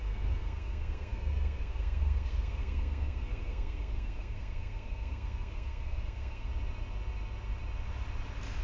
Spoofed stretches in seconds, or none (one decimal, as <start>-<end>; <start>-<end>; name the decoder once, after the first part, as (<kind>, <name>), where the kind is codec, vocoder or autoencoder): 0.0-6.5 (codec, SNAC)